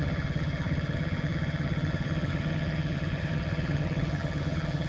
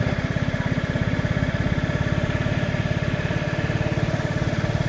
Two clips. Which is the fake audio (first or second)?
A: first